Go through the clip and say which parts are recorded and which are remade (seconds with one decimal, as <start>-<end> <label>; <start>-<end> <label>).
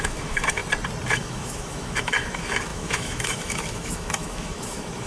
0.0-0.6 remade; 0.6-1.2 recorded; 1.2-5.1 remade